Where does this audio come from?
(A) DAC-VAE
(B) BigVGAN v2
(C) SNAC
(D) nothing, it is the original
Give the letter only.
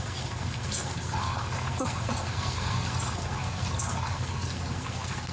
C